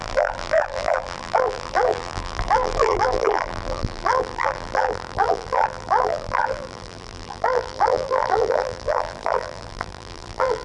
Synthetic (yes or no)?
yes